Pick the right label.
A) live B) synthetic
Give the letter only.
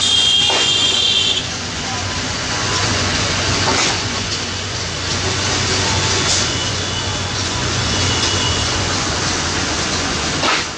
B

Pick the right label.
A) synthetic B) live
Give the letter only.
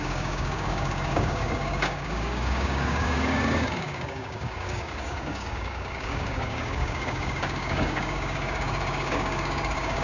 A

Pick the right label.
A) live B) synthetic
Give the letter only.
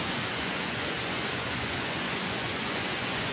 B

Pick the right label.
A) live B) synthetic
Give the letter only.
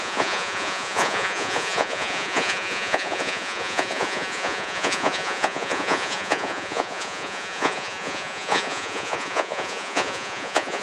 B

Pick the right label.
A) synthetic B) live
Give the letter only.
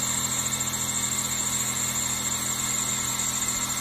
B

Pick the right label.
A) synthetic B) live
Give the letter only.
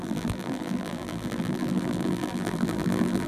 A